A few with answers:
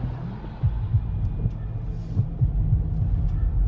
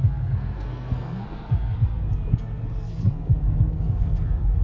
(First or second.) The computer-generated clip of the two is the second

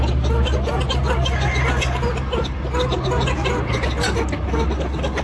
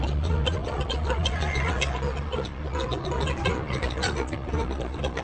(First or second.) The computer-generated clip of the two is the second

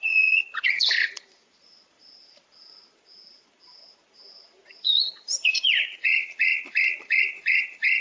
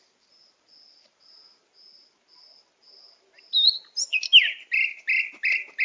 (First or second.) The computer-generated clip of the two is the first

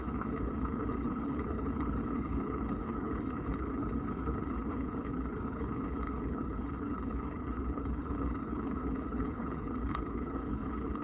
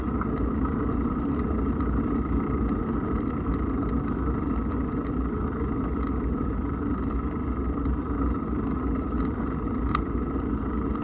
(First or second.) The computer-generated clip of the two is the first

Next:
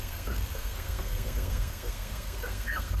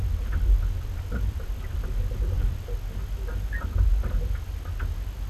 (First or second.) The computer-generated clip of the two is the first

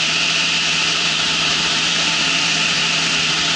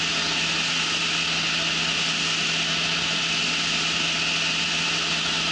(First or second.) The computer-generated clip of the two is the first